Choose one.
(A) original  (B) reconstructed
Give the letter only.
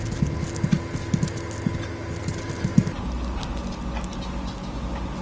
A